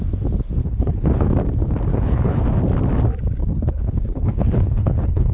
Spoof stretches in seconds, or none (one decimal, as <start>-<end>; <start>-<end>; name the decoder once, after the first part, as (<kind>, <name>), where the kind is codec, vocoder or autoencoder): 0.6-1.3 (codec, HILCodec); 1.9-2.4; 3.4-5.3